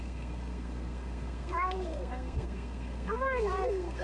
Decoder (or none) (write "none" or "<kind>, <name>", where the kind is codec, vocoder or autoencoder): codec, SNAC